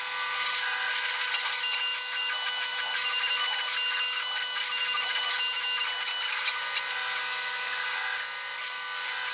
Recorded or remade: recorded